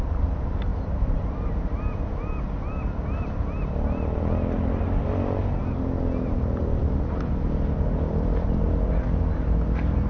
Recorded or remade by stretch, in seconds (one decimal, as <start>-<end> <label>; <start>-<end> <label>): 0.0-10.1 recorded